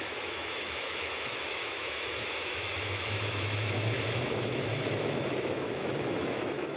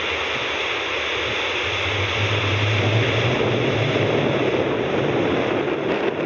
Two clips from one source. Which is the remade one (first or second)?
first